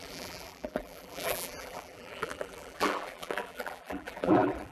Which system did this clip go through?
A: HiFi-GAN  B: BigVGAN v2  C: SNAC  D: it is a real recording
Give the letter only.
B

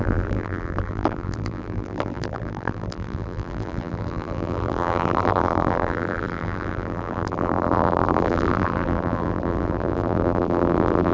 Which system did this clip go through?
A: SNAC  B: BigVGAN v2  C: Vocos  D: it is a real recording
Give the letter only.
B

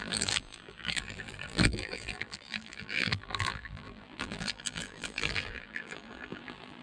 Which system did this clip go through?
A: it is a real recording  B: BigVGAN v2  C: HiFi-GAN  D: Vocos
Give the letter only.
B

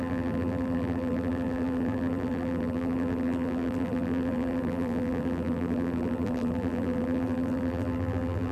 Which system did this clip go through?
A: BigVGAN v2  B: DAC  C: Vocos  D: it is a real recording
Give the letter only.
A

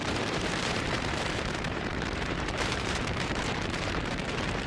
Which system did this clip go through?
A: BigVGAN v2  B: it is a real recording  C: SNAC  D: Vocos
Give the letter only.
A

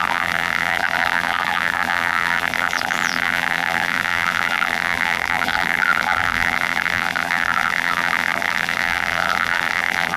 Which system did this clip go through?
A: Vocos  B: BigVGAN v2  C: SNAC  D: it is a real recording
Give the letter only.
B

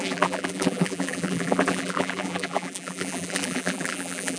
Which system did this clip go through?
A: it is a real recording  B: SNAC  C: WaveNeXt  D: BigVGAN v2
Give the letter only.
D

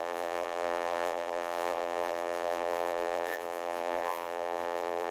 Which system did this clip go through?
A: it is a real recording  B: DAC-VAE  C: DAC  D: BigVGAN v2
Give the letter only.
D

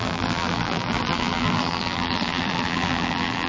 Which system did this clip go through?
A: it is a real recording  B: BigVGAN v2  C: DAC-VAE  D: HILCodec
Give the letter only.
B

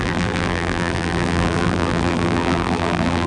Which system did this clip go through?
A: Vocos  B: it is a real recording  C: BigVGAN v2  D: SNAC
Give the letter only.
C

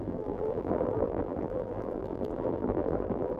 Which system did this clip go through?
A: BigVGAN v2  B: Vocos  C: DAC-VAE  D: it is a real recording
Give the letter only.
A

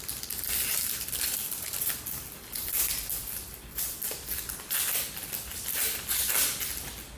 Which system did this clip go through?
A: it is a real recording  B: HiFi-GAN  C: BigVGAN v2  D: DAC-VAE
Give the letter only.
A